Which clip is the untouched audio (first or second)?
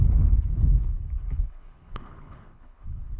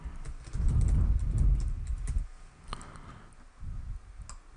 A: second